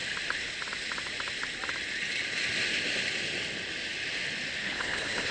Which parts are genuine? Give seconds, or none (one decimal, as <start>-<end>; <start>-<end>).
0.0-4.6